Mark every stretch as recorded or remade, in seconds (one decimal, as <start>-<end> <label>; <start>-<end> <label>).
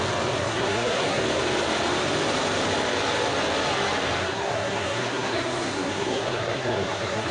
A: 0.0-0.4 recorded; 0.4-1.2 remade; 1.2-4.2 recorded; 4.2-7.3 remade